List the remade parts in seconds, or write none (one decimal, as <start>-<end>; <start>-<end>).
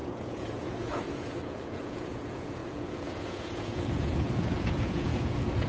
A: 0.0-5.7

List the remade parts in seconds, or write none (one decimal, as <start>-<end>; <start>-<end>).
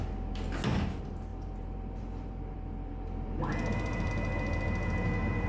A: 1.3-4.1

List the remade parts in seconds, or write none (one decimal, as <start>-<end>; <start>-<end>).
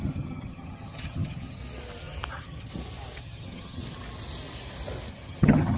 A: 0.0-1.6; 2.3-2.7; 3.2-3.8; 5.1-5.8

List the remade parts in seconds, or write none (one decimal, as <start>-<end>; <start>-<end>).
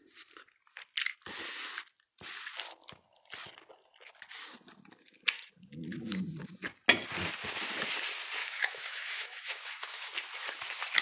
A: 8.4-10.1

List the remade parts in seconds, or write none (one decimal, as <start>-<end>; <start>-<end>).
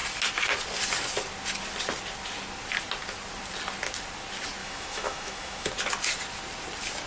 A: 4.6-5.7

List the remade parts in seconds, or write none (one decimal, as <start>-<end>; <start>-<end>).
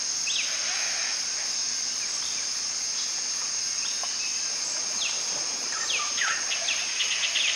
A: none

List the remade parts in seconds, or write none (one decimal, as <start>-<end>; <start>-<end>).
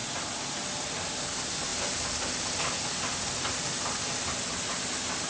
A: none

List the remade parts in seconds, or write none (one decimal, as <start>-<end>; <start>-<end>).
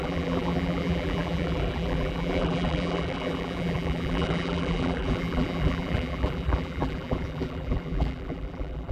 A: 0.0-8.9